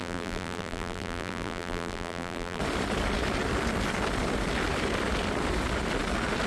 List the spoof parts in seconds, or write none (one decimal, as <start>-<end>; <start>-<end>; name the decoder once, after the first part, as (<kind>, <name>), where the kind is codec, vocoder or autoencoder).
0.0-2.6 (vocoder, BigVGAN v2)